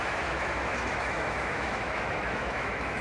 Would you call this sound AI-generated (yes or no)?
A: yes